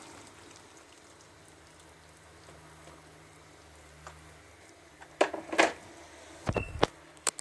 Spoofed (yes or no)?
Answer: no